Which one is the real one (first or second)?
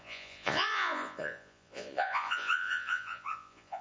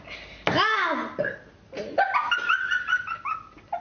second